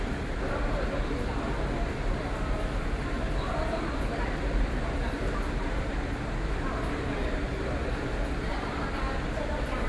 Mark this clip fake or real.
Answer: real